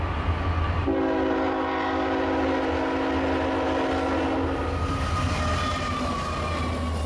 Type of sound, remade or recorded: recorded